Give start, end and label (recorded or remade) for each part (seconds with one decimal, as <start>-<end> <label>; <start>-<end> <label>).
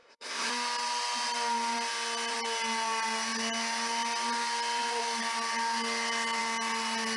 0.0-0.5 remade; 0.5-7.2 recorded